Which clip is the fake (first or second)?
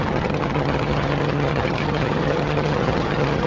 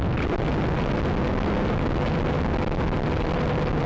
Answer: first